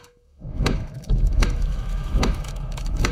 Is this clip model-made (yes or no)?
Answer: yes